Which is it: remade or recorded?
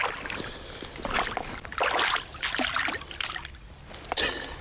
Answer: recorded